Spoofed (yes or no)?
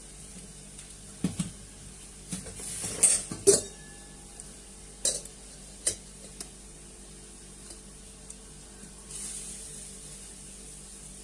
no